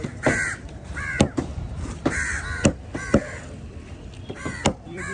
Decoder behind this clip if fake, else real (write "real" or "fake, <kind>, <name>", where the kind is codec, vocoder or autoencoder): fake, vocoder, BigVGAN v2